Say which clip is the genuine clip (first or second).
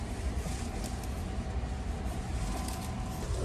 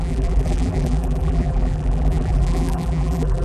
first